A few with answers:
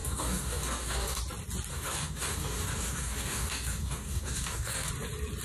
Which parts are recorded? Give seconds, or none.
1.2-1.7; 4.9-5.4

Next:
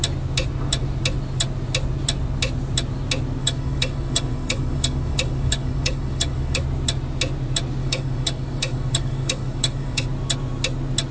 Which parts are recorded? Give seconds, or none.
0.0-3.4; 6.6-7.8; 10.0-11.1

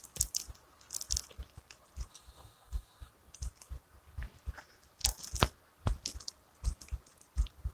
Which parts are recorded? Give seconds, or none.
0.0-2.1; 3.1-7.7

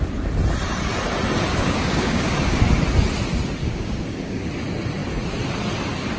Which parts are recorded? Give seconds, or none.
0.0-1.5; 2.6-3.6; 4.5-6.2

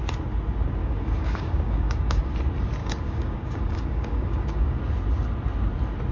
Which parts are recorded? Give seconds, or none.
0.0-0.8; 2.3-2.8; 4.8-6.1

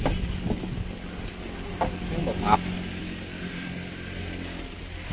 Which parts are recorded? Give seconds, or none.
0.0-5.1